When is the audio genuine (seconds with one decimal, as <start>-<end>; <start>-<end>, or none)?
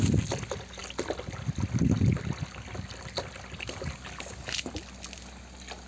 0.0-5.9